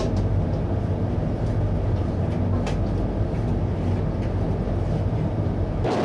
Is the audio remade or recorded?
recorded